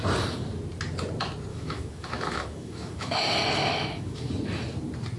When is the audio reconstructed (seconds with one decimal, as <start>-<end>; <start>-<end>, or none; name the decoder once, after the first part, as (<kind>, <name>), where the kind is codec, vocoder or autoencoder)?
1.5-3.2 (autoencoder, DAC-VAE); 3.6-4.3